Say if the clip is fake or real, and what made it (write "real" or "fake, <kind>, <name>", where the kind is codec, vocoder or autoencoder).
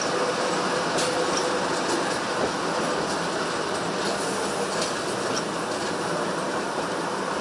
real